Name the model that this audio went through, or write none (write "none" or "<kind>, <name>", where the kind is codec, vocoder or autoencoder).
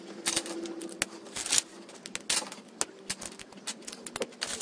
none